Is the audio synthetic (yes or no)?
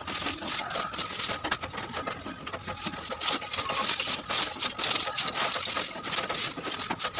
no